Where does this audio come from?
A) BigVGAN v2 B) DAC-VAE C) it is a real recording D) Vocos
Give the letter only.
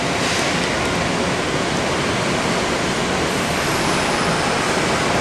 C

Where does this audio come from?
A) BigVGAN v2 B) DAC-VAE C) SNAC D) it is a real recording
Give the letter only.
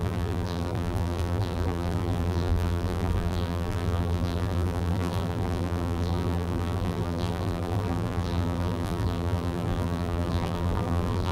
A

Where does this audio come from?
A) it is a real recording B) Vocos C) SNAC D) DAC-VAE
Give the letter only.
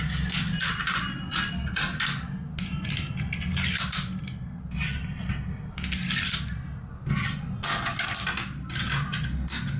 A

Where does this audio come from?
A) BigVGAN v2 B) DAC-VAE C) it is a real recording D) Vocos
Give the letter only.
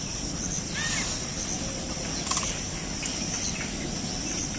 C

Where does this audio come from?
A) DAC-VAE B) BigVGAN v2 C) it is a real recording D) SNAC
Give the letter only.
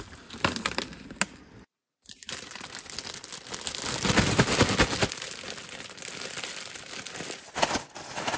C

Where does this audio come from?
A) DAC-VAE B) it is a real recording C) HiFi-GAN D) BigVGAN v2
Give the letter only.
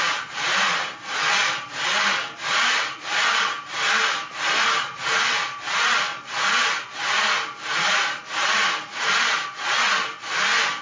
B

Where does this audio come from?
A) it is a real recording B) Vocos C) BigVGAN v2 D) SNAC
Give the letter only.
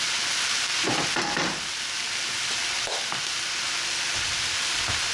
C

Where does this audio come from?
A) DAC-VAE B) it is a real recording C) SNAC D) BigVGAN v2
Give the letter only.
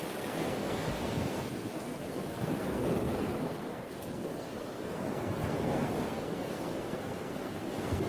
C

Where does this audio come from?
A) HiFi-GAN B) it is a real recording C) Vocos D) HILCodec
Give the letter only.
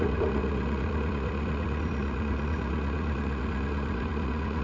C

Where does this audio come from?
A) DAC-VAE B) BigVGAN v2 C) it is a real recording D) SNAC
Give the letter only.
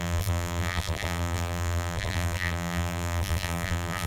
B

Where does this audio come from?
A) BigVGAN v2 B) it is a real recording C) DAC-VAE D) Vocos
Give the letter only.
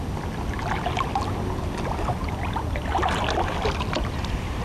B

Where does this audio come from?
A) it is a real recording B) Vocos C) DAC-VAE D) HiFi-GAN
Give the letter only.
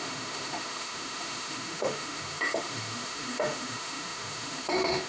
C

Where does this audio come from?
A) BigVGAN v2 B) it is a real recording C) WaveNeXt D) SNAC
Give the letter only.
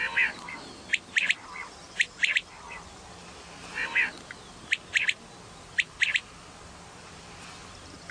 B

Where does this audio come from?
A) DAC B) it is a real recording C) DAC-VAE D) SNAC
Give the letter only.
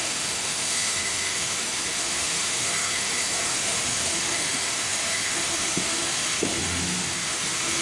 C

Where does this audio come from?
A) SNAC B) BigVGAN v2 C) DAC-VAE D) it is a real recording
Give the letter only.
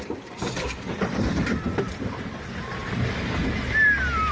D